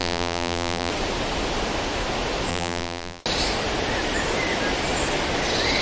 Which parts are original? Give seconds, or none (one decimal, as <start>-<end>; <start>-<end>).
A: 0.9-2.5; 3.2-5.8